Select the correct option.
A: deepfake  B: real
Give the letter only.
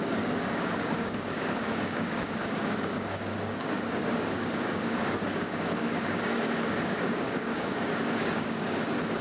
A